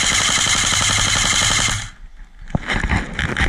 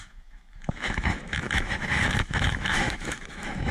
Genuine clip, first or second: first